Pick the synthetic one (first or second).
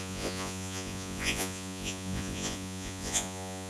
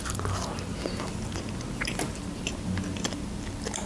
first